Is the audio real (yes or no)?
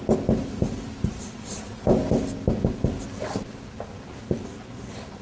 yes